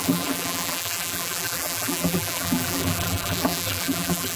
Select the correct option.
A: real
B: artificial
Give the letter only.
B